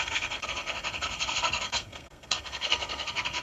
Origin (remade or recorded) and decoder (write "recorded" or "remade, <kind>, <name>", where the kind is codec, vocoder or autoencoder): remade, codec, SNAC